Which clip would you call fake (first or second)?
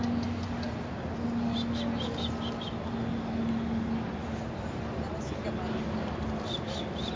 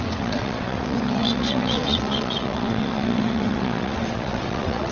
second